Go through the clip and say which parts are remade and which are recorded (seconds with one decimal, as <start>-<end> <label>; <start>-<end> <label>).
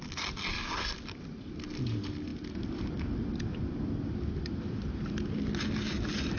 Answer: 0.0-6.4 recorded